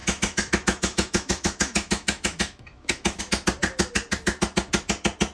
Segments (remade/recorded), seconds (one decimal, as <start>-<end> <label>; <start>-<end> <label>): 0.0-3.2 remade; 3.2-5.3 recorded